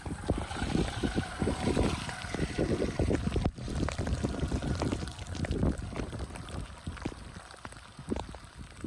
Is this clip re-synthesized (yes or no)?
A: yes